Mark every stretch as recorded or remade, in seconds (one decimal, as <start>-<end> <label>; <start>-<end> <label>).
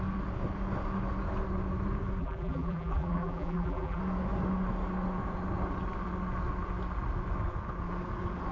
0.0-2.2 recorded; 2.2-4.0 remade; 4.0-8.5 recorded